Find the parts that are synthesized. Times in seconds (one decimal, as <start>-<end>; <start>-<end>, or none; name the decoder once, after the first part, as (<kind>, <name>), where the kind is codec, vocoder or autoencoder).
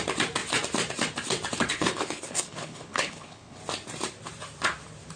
1.7-3.6 (codec, HILCodec)